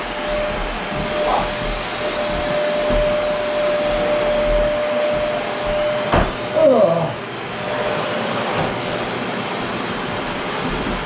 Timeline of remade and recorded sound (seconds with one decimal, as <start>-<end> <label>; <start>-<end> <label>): 0.0-9.7 recorded; 9.7-11.1 remade